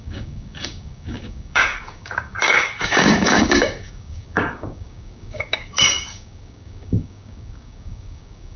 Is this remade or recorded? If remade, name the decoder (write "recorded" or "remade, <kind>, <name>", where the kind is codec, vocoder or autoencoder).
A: remade, codec, DAC